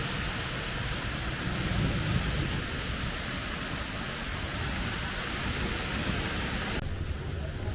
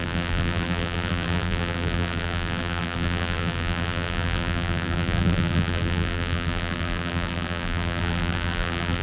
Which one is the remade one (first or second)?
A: second